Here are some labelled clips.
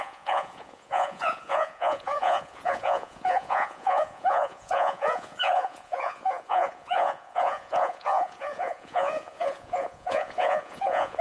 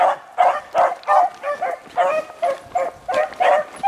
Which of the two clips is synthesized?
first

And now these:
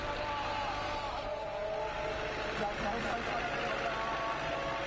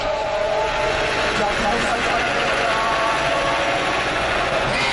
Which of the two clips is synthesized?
second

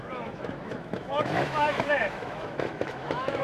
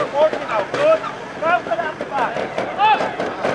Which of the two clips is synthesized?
first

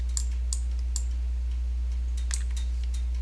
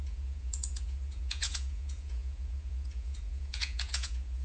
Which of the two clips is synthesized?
second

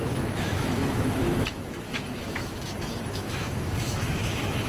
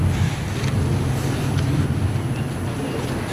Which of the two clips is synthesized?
first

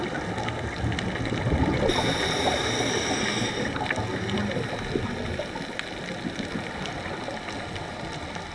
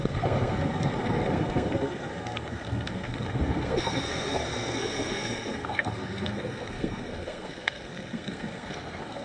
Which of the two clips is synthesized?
second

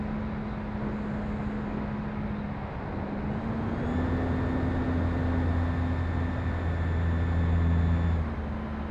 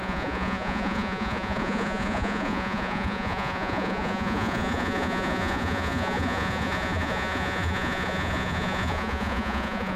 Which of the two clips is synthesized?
second